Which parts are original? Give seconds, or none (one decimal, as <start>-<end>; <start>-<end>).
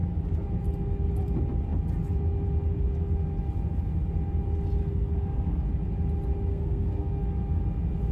0.0-4.8; 5.6-6.5; 7.2-8.1